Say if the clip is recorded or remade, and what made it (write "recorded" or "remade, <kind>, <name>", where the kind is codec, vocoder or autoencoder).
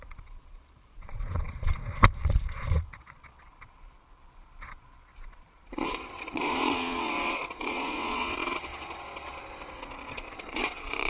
remade, vocoder, Vocos